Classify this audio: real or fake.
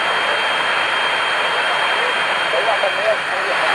fake